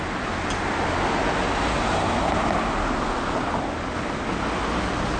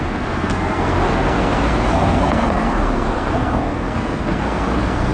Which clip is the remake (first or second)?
second